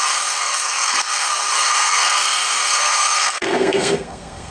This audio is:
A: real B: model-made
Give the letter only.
B